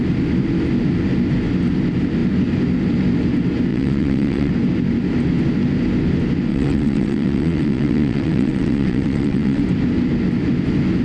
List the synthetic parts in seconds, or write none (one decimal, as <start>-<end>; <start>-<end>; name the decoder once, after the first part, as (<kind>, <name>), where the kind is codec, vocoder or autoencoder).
3.7-4.5 (vocoder, WaveNeXt); 6.5-9.6